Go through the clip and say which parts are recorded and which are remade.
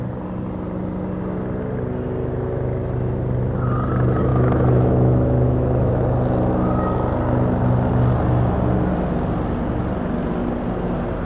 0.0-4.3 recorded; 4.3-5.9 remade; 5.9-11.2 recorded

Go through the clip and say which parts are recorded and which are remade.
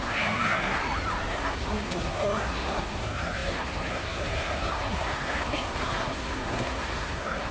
0.0-0.8 remade; 0.8-1.3 recorded; 1.3-7.5 remade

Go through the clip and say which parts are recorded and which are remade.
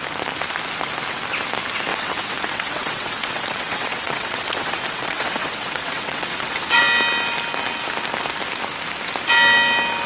0.0-1.9 recorded; 1.9-6.8 remade; 6.8-10.1 recorded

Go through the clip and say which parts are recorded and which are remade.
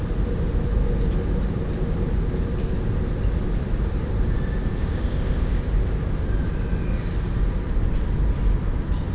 0.0-4.8 recorded; 4.8-5.6 remade; 5.6-9.1 recorded